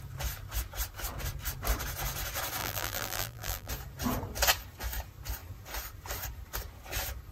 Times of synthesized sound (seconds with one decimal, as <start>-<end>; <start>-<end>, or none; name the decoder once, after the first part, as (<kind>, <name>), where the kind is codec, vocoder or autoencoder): 2.6-3.7 (vocoder, BigVGAN v2)

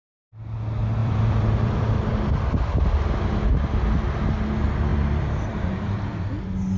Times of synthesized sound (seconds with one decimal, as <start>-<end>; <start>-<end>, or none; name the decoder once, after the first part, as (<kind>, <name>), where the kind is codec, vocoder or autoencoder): 1.0-2.1 (vocoder, BigVGAN v2); 4.9-6.3

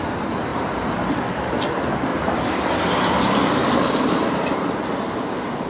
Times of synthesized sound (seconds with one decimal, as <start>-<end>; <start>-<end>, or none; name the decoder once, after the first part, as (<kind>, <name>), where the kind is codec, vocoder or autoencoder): 0.5-1.5 (vocoder, BigVGAN v2); 2.1-5.7

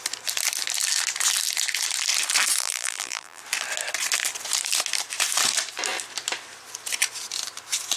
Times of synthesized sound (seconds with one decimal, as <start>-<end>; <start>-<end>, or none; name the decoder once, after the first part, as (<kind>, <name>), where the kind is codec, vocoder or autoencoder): 2.6-3.4 (vocoder, BigVGAN v2)

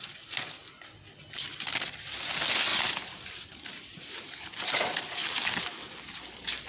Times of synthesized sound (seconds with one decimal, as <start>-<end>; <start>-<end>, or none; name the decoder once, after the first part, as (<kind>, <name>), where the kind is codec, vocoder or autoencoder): 2.7-5.0 (vocoder, BigVGAN v2)

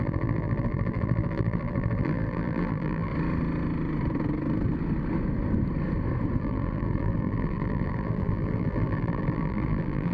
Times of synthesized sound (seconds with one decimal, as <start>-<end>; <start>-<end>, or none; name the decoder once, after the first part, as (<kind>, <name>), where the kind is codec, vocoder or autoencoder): 0.0-3.1 (vocoder, BigVGAN v2); 6.4-10.1